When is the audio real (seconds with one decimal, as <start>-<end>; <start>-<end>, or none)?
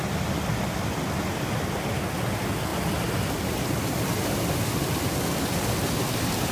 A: 0.0-6.5